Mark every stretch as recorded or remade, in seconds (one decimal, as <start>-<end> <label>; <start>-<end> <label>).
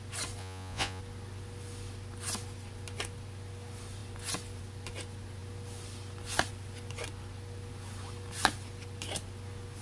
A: 0.0-0.4 recorded; 0.4-1.0 remade; 1.0-9.8 recorded